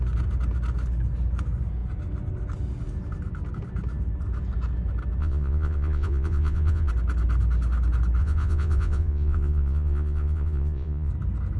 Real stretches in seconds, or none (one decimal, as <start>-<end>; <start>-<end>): 0.0-5.2; 6.9-8.2; 11.1-11.6